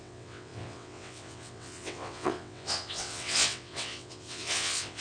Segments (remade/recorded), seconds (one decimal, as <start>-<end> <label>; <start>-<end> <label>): 0.0-5.0 remade

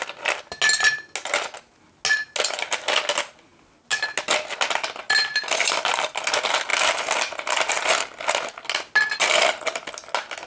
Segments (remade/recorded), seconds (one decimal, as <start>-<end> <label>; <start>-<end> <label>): 0.0-10.5 recorded

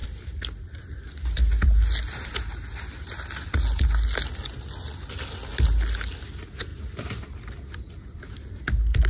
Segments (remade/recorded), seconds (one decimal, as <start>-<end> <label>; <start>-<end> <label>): 0.0-9.1 recorded

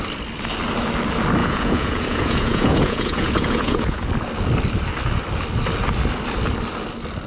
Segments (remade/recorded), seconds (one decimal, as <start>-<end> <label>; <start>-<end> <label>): 0.0-1.4 recorded; 1.4-4.1 remade; 4.1-7.3 recorded

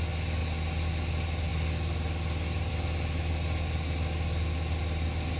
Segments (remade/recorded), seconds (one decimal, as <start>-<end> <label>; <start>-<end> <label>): 0.0-5.4 recorded

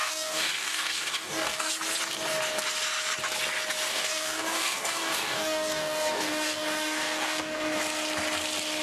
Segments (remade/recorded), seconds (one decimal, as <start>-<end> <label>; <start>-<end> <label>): 0.0-1.7 remade; 1.7-3.9 recorded; 3.9-7.8 remade; 7.8-8.8 recorded